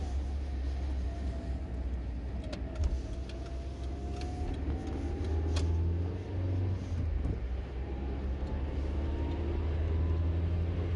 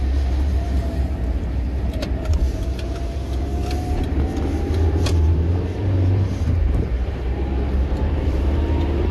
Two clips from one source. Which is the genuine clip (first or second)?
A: first